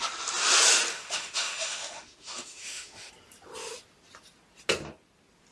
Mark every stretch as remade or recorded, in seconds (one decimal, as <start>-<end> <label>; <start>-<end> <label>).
0.0-0.9 recorded; 0.9-3.1 remade; 3.1-5.5 recorded